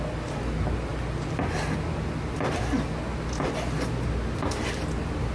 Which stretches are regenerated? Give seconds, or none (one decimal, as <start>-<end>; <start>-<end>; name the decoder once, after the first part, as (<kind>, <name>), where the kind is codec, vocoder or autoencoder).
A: none